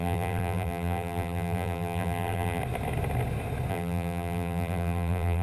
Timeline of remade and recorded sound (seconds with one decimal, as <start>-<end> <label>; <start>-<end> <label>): 0.0-2.6 remade; 2.6-3.7 recorded; 3.7-5.4 remade